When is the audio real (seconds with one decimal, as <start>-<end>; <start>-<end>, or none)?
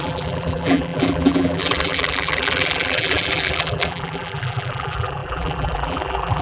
none